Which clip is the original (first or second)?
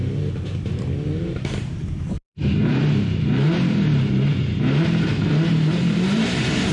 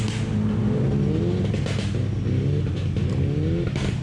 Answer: second